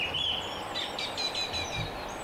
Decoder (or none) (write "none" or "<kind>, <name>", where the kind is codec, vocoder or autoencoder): vocoder, BigVGAN v2